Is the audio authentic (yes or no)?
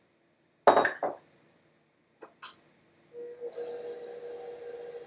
yes